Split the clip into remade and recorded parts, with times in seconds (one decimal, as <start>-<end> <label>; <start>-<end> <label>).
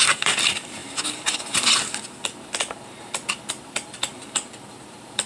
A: 0.0-0.8 remade; 0.8-3.5 recorded; 3.5-4.1 remade; 4.1-4.7 recorded; 4.7-5.3 remade